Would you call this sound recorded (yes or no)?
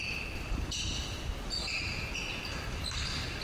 yes